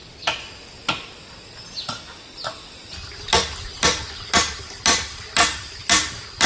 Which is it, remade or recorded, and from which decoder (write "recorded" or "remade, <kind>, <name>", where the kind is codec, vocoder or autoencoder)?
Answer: recorded